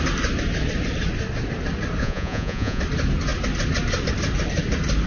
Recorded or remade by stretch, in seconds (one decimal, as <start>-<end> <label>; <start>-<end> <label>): 0.0-2.0 recorded; 2.0-2.8 remade; 2.8-5.1 recorded